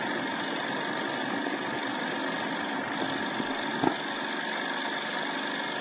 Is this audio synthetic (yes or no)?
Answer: no